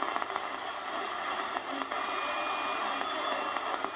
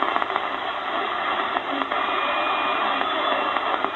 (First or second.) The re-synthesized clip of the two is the second